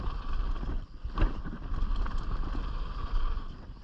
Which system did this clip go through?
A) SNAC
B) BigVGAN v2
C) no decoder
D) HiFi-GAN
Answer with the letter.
C